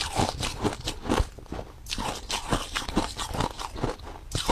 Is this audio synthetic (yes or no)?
no